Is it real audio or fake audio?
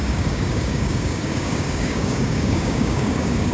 fake